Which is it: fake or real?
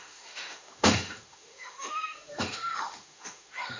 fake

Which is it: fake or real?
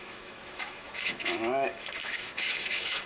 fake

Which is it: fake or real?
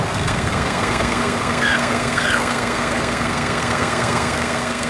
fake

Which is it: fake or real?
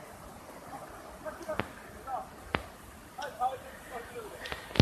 real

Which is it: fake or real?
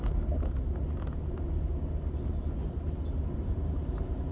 real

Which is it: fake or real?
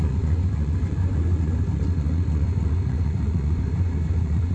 fake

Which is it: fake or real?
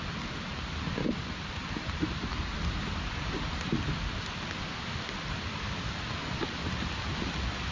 real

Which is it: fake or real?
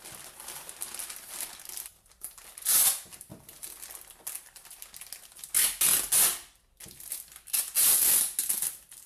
real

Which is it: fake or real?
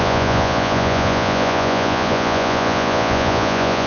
fake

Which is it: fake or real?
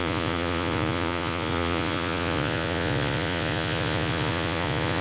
fake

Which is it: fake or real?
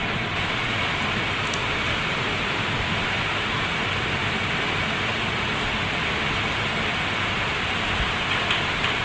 real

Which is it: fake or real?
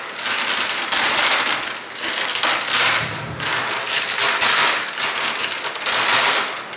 real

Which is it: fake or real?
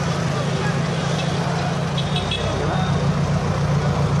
real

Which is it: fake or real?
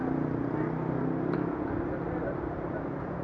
real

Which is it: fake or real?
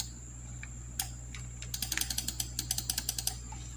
real